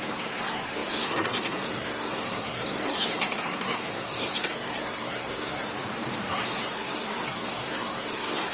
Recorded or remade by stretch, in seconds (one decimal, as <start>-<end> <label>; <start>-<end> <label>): 0.0-5.7 remade; 5.7-6.3 recorded; 6.3-8.5 remade